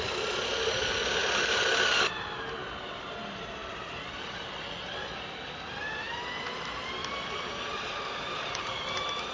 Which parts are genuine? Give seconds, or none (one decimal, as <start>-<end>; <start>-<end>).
0.0-7.0; 8.7-9.3